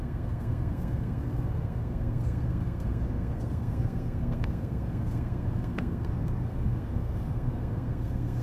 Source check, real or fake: fake